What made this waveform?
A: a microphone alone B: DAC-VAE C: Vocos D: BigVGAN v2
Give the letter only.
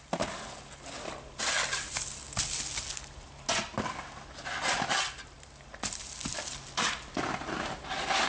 A